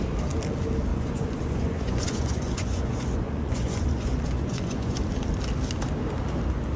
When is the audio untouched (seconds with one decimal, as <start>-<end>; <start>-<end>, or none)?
0.0-0.9; 5.0-6.8

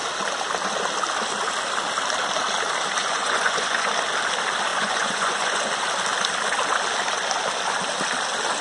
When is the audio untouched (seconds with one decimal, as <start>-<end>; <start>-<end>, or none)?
0.0-3.0; 3.9-4.7; 5.7-8.6

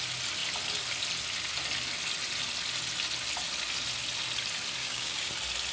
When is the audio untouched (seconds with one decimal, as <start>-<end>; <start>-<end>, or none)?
0.0-4.8; 5.3-5.7

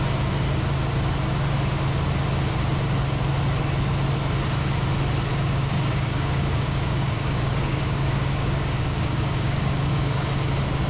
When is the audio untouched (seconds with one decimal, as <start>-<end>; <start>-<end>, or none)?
0.0-5.3; 10.3-10.9